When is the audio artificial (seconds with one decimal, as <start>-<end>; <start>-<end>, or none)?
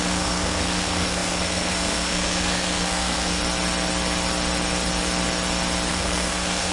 0.0-3.4; 5.9-6.7